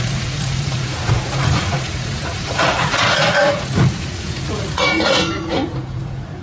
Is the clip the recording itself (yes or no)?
no